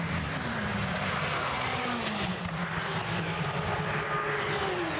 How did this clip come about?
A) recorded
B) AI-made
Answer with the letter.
A